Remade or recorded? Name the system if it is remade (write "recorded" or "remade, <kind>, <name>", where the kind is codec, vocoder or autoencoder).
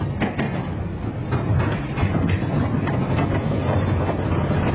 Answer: recorded